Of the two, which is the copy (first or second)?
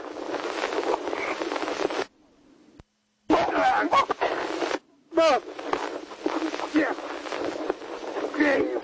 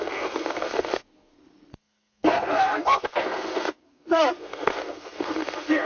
second